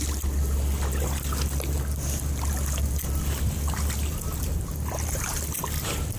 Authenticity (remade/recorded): recorded